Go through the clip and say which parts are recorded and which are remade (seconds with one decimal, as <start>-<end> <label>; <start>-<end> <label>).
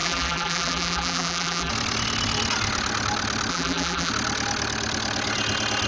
0.0-1.7 remade; 1.7-3.5 recorded; 3.5-4.1 remade; 4.1-5.9 recorded